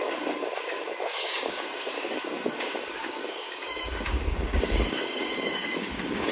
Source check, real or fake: fake